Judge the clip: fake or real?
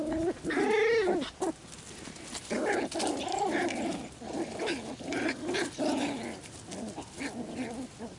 real